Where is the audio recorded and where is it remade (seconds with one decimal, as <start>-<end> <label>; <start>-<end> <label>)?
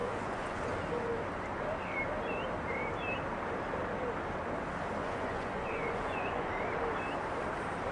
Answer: 0.0-0.6 remade; 0.6-5.0 recorded; 5.0-6.5 remade; 6.5-7.9 recorded